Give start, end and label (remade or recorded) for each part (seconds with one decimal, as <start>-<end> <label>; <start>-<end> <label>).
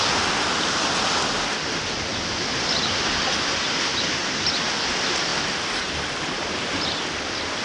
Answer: 0.0-7.6 recorded